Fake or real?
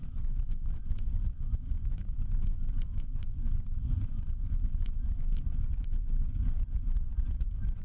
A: fake